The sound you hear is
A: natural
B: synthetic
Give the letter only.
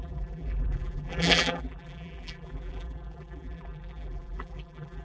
B